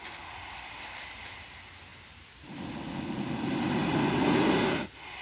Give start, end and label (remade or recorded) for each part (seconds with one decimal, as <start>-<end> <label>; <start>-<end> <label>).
0.0-5.2 recorded